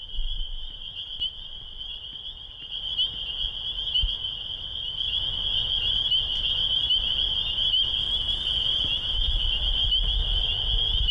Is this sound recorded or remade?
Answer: recorded